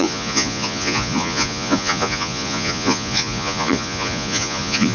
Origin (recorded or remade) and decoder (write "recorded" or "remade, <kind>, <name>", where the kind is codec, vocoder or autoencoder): remade, vocoder, Vocos